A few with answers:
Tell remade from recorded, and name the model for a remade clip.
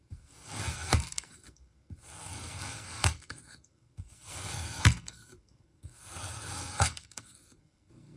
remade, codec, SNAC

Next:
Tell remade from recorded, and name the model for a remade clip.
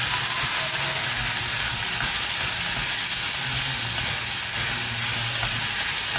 recorded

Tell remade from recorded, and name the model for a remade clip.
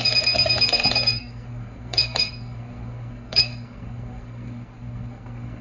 remade, codec, SNAC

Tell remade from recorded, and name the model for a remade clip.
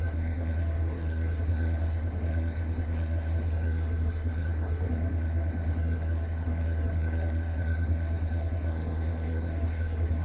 remade, codec, SNAC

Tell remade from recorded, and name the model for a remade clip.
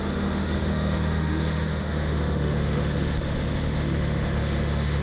remade, autoencoder, DAC-VAE